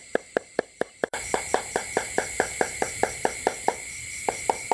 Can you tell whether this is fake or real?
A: fake